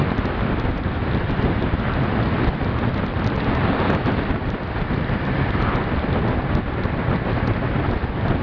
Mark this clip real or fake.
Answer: real